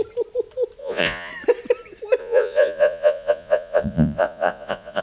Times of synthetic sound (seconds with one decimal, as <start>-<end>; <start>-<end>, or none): 0.8-1.3; 2.2-5.0